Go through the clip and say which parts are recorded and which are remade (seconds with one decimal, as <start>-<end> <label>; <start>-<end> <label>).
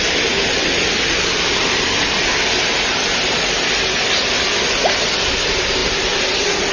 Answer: 0.0-6.7 recorded